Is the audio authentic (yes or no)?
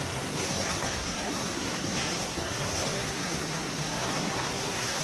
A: no